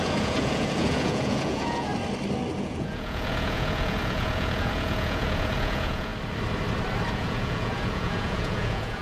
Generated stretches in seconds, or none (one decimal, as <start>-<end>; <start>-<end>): 0.0-1.9; 2.6-6.1; 7.1-9.0